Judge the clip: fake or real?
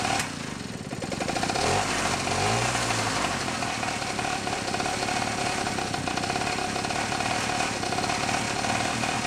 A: real